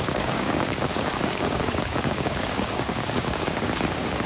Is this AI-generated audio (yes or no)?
yes